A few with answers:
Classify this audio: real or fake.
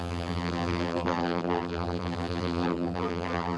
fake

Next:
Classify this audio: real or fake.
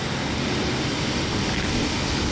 real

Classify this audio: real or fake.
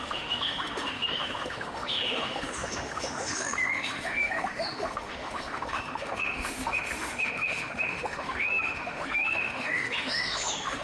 fake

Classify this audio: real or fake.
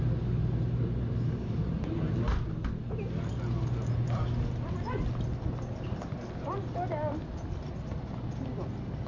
real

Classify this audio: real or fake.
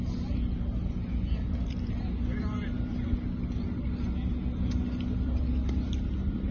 real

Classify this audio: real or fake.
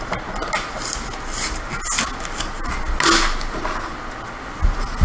real